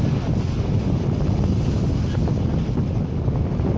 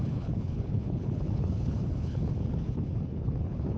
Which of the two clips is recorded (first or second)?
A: first